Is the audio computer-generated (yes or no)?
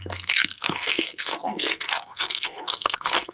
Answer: yes